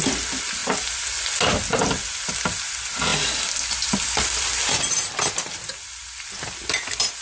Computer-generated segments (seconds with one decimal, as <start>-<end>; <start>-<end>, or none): none